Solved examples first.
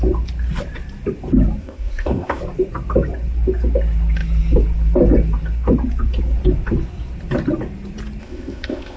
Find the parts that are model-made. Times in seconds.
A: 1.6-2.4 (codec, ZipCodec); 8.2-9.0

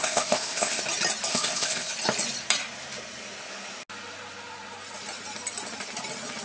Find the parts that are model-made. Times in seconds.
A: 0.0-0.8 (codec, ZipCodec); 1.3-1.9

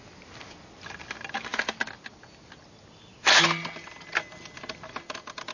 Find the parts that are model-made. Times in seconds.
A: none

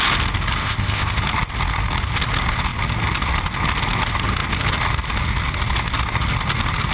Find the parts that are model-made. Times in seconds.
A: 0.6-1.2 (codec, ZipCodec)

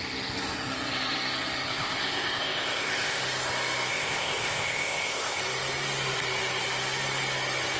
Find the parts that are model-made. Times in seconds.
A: 1.7-3.2 (codec, ZipCodec); 3.9-5.4

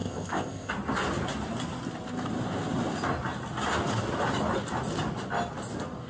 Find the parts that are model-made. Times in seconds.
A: 0.0-0.7 (codec, ZipCodec)

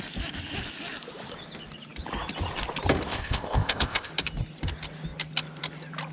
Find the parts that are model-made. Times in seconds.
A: 3.1-4.1 (codec, ZipCodec)